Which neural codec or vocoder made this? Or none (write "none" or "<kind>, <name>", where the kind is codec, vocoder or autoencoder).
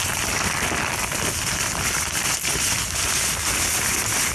none